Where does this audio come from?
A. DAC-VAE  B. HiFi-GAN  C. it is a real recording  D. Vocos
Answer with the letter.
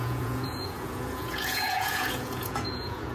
D